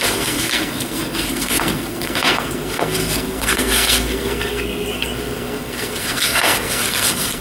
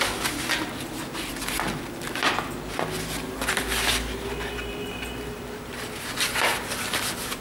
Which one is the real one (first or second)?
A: second